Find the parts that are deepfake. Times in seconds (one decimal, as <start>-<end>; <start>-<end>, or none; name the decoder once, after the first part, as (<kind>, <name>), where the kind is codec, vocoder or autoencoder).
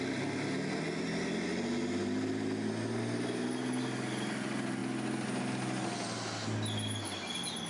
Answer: none